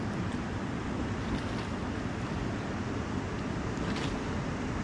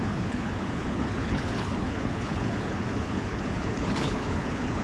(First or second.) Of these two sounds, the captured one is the first